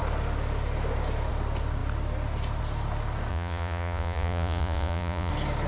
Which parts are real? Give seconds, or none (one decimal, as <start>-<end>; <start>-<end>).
0.0-3.3; 5.3-5.7